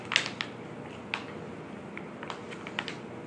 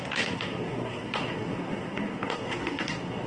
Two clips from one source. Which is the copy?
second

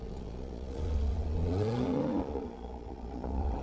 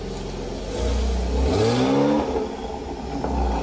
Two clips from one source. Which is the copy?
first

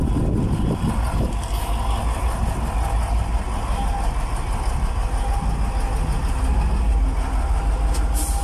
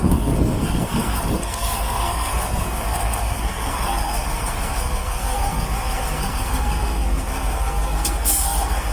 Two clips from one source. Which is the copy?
second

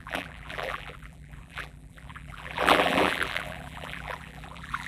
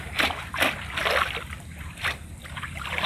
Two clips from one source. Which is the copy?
first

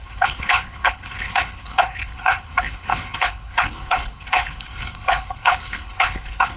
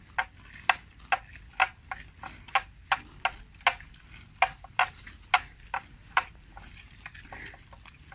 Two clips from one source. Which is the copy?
first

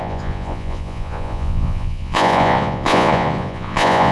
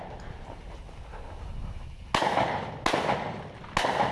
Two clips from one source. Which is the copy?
first